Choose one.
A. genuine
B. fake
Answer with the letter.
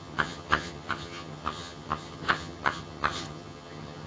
B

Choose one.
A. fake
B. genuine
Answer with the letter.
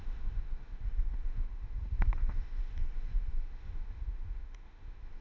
A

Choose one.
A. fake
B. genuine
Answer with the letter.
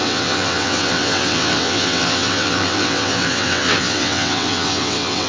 A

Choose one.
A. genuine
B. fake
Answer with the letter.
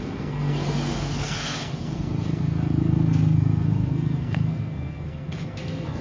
B